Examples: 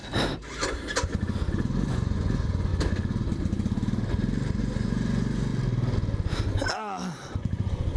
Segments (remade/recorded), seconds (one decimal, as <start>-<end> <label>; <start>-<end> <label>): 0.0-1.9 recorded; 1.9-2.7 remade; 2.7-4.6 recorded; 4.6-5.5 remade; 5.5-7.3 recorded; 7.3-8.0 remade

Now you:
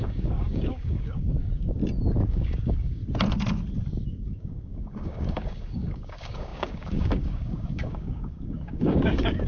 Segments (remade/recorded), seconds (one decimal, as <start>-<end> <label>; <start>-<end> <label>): 0.0-1.8 remade; 1.8-2.3 recorded; 2.3-3.0 remade; 3.0-4.1 recorded; 4.1-9.5 remade

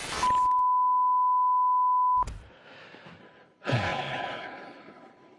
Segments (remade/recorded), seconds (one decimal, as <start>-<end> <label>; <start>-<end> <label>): 0.0-3.2 recorded; 3.2-5.4 remade

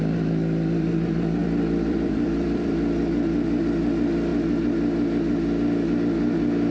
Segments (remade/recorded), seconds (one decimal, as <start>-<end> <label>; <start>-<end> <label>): 0.0-1.4 recorded; 1.4-3.0 remade; 3.0-6.7 recorded